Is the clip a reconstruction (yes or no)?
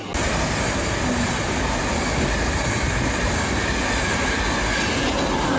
no